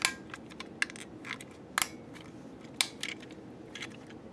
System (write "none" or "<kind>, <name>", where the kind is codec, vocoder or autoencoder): none